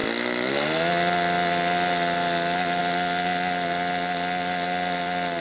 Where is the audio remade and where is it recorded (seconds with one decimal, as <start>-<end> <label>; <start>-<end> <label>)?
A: 0.0-5.4 recorded